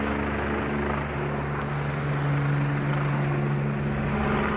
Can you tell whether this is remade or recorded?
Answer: recorded